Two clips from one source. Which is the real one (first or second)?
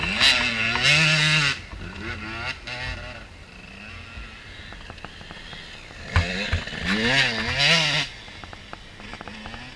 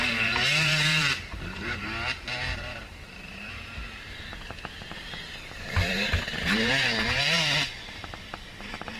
first